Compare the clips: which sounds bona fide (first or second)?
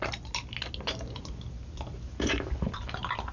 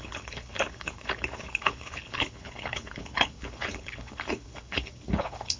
first